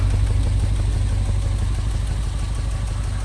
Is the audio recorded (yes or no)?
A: yes